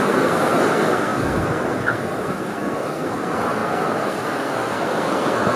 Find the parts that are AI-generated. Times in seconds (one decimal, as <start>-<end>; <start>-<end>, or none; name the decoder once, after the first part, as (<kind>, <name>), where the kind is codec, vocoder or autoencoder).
0.0-5.6 (codec, SNAC)